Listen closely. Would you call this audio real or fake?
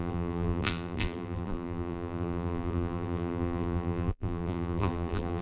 fake